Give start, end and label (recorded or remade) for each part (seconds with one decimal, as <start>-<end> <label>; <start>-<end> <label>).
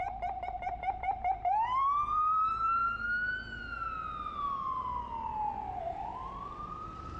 0.0-2.8 remade; 2.8-5.8 recorded; 5.8-7.2 remade